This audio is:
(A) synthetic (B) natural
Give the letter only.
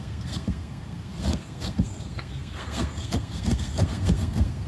A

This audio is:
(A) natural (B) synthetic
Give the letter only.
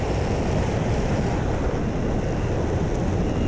A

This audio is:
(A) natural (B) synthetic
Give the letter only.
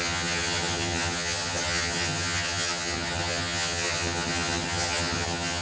B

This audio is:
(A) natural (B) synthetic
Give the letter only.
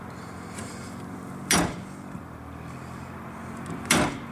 A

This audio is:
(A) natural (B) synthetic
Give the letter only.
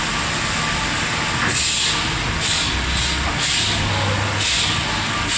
A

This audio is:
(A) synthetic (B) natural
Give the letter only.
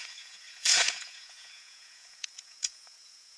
A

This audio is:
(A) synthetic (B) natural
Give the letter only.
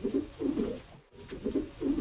A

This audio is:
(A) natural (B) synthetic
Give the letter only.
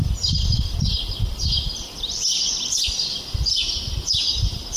A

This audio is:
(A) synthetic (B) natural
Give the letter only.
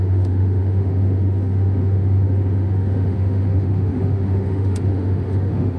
A